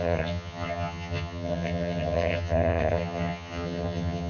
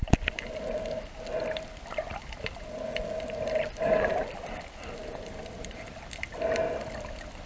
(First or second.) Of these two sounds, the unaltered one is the second